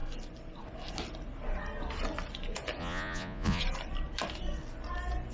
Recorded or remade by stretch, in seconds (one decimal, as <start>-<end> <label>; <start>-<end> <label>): 0.0-2.8 recorded; 2.8-3.6 remade; 3.6-5.3 recorded